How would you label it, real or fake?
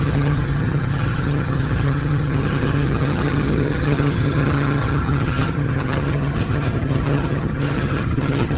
fake